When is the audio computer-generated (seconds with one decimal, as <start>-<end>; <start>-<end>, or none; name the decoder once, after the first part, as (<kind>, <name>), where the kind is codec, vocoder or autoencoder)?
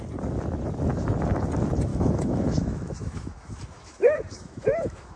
1.9-5.2 (autoencoder, DAC-VAE)